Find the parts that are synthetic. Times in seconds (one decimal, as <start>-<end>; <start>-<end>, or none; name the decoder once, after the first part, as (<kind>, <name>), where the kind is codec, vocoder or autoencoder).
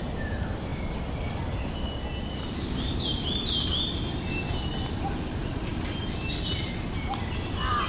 none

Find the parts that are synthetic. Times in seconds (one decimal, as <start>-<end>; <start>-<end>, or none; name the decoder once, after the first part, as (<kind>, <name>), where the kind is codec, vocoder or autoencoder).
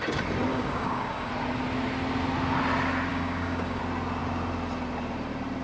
0.5-1.3 (codec, DAC); 3.1-3.8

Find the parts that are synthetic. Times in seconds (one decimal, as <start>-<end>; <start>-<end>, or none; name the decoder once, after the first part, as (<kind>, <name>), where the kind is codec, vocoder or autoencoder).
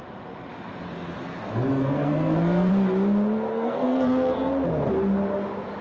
1.3-2.7 (codec, SNAC); 3.5-4.5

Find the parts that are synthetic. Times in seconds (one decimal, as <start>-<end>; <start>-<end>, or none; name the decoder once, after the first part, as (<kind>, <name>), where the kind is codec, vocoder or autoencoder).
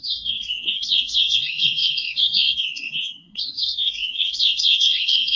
0.0-5.4 (codec, SNAC)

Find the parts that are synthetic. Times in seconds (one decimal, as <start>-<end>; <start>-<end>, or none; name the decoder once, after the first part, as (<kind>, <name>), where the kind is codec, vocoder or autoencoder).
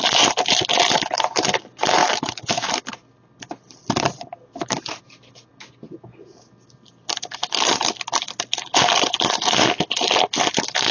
2.0-2.7 (autoencoder, DAC-VAE)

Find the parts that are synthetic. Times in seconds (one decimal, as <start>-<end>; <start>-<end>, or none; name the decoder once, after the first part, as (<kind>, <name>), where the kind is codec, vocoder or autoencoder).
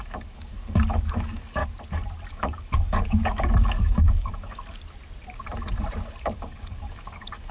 0.0-1.6 (codec, DAC); 2.3-4.6; 6.2-7.5